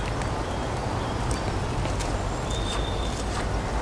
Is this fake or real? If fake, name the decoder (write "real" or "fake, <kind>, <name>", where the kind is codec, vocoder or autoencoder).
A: real